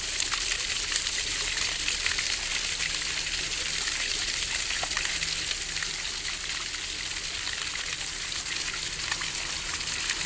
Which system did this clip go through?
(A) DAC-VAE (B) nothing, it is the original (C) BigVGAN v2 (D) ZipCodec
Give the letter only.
B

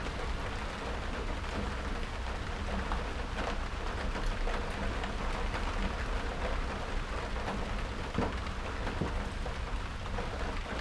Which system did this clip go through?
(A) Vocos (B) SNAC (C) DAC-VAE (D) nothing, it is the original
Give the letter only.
D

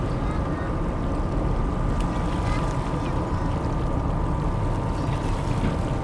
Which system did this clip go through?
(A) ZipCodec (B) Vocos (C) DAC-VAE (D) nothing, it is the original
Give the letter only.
D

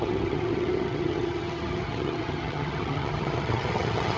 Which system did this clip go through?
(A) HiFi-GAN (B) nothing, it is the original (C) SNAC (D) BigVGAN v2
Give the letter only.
A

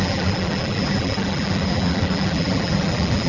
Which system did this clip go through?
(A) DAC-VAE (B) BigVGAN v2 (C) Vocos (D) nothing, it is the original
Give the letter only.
B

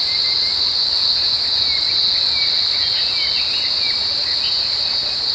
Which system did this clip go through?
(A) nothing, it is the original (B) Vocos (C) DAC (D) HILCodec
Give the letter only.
A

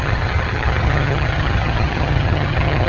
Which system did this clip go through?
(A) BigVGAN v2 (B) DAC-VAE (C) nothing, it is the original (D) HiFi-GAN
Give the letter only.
D